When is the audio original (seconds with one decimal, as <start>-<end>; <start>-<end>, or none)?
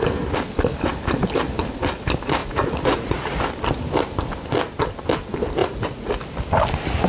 0.0-2.4; 3.4-5.6; 6.2-7.1